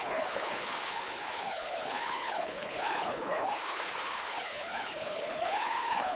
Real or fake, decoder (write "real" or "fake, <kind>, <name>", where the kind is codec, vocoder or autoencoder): fake, codec, HILCodec